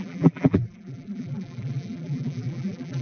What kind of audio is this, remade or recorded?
remade